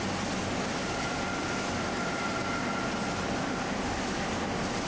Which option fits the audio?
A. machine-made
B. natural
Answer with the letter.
B